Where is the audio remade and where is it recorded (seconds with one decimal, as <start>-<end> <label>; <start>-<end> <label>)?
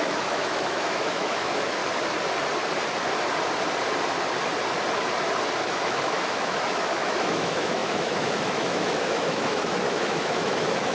0.0-1.8 remade; 1.8-5.6 recorded; 5.6-10.9 remade